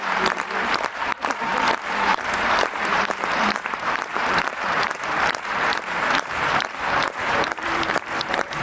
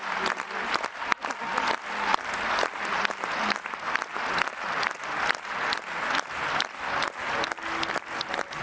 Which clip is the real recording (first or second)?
second